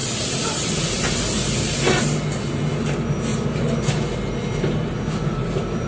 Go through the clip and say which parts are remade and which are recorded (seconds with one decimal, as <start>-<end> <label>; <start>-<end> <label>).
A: 0.0-5.9 recorded